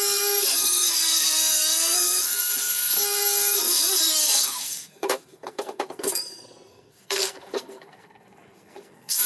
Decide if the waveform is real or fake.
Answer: fake